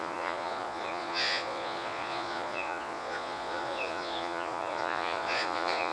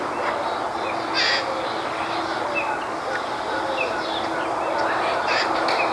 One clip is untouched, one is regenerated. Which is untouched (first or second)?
second